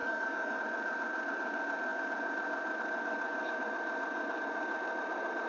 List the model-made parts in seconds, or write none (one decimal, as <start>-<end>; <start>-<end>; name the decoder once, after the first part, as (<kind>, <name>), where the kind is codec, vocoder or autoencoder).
0.0-0.6 (codec, DAC)